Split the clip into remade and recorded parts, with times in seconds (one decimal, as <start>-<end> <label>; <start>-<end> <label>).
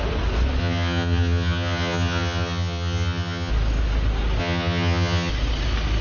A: 0.0-0.6 recorded; 0.6-3.5 remade; 3.5-4.4 recorded; 4.4-5.3 remade; 5.3-6.0 recorded